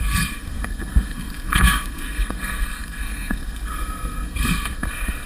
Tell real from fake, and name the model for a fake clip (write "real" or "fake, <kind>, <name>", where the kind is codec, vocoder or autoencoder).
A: fake, codec, SNAC